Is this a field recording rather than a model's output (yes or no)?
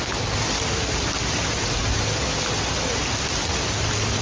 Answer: yes